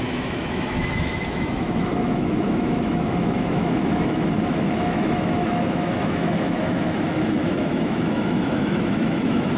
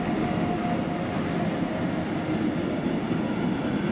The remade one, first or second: first